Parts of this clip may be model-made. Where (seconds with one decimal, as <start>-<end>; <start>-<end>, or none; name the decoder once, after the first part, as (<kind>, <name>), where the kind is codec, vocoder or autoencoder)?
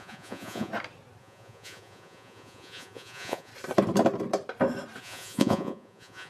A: 0.0-0.7 (vocoder, Vocos); 1.2-3.5; 5.0-6.3